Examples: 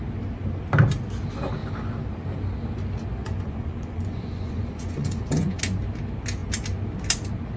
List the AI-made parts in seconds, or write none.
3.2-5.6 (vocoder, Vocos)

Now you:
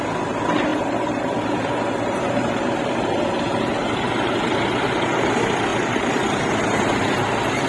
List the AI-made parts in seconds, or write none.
0.7-5.3 (vocoder, BigVGAN v2); 5.7-6.5

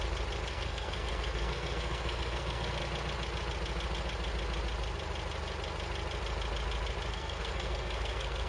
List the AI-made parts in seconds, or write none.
0.5-2.8 (codec, SNAC); 7.1-8.5